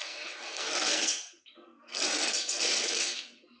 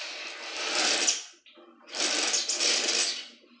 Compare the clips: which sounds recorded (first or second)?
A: second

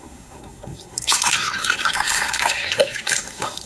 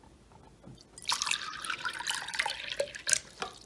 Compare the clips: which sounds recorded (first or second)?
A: second